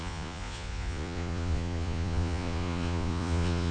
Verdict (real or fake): fake